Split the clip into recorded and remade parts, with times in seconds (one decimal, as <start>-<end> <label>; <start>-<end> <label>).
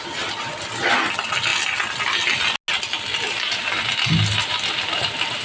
0.0-5.4 recorded